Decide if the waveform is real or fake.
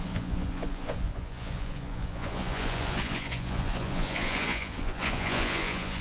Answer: fake